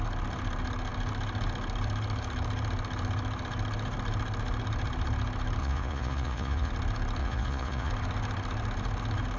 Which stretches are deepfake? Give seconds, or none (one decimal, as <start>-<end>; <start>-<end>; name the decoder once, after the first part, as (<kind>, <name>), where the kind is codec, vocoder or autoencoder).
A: 5.6-6.7 (vocoder, Vocos); 7.2-7.9